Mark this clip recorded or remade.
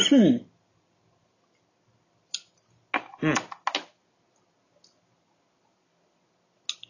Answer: recorded